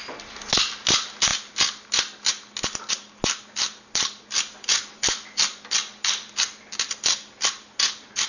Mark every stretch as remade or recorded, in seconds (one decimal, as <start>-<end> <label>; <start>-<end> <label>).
0.0-8.3 recorded

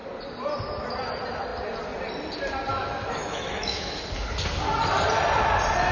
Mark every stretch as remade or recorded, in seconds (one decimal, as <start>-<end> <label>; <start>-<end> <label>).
0.0-2.7 recorded; 2.7-4.0 remade; 4.0-5.9 recorded

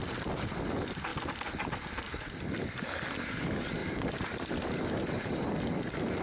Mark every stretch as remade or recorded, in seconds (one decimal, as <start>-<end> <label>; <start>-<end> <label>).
0.0-1.1 remade; 1.1-2.1 recorded; 2.1-3.8 remade; 3.8-5.2 recorded; 5.2-6.2 remade

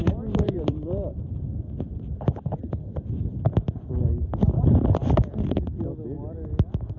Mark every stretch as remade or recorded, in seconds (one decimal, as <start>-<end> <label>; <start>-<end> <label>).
0.0-1.5 remade; 1.5-7.0 recorded

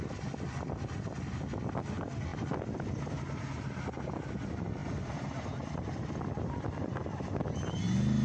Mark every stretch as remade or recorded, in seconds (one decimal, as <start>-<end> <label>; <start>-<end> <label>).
0.0-2.3 recorded; 2.3-3.2 remade; 3.2-4.8 recorded; 4.8-6.6 remade; 6.6-8.2 recorded

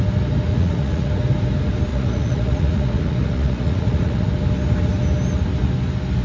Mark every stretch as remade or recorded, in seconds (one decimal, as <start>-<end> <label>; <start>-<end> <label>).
0.0-0.5 recorded; 0.5-1.1 remade; 1.1-1.9 recorded; 1.9-4.3 remade; 4.3-6.2 recorded